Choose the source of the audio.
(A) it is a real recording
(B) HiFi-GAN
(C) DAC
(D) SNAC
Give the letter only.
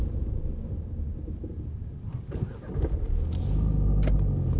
A